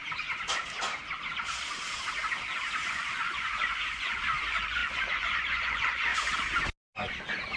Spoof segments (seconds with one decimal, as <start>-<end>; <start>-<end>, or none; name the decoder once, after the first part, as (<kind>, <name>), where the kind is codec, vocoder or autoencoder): 2.9-6.1 (vocoder, Vocos)